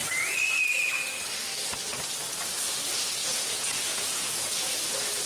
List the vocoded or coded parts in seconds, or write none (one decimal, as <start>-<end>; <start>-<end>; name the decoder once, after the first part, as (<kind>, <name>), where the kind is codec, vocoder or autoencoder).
3.2-4.6 (vocoder, Vocos)